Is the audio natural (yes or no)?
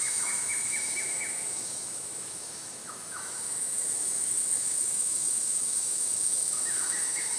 no